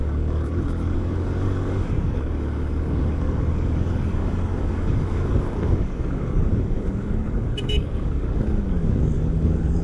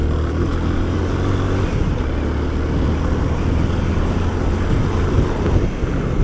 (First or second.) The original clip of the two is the second